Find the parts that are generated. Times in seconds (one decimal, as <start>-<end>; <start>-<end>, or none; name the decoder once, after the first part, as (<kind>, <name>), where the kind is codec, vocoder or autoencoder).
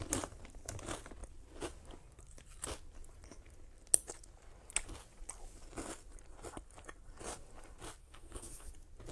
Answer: 8.0-8.7 (codec, SNAC)